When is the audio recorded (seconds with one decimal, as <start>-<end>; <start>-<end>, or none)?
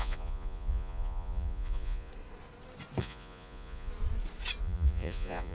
2.1-3.0; 3.9-4.6